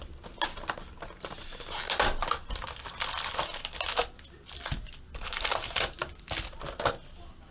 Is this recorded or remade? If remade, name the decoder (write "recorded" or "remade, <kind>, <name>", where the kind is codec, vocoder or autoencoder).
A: recorded